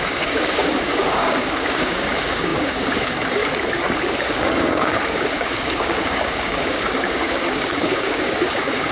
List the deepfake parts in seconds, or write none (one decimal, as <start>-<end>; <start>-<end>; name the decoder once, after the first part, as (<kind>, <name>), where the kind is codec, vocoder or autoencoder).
0.0-3.4 (codec, DAC); 4.2-8.9